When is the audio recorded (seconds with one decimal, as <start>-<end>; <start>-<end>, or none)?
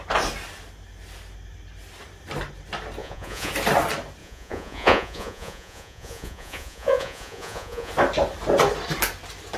0.0-3.0; 3.5-4.2; 7.9-9.6